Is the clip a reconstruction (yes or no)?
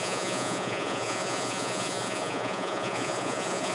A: yes